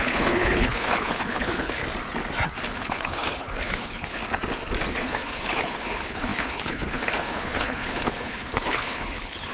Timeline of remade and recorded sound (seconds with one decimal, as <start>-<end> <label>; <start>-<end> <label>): 0.0-1.8 remade; 1.8-2.7 recorded; 2.7-4.2 remade; 4.2-4.9 recorded; 4.9-9.5 remade